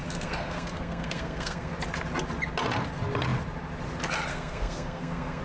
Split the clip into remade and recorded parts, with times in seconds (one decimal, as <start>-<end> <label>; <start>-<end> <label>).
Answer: 0.0-1.7 remade; 1.7-4.3 recorded; 4.3-5.4 remade